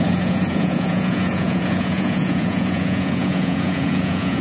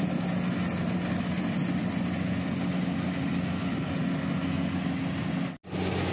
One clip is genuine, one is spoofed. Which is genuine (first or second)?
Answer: second